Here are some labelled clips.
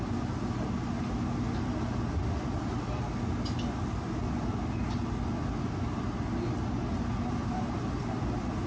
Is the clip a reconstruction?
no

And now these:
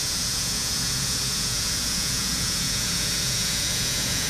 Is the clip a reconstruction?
yes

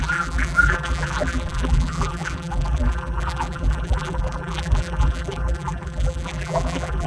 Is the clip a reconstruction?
yes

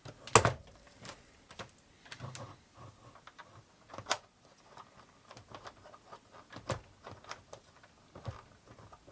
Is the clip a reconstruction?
no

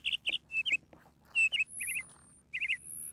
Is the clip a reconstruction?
no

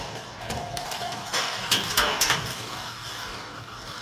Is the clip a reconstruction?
yes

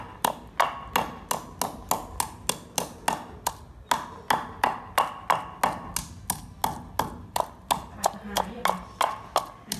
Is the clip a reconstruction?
no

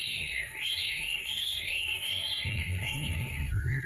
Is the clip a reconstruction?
yes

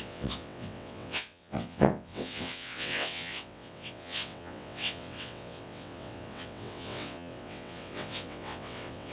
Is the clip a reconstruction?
yes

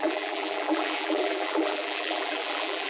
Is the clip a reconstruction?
yes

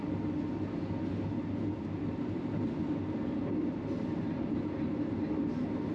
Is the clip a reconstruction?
no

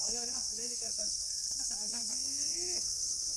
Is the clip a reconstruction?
yes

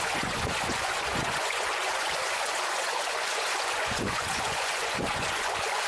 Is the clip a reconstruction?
yes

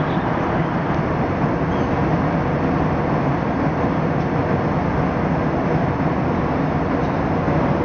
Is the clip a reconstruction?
no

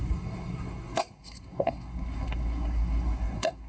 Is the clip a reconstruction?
yes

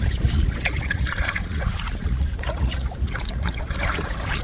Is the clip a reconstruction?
yes